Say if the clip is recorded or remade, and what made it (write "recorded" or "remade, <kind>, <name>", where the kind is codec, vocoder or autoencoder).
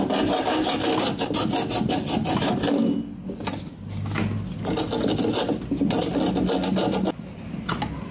recorded